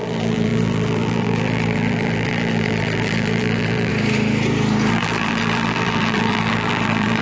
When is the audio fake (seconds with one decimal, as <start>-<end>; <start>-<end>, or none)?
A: 0.0-3.9; 4.9-7.2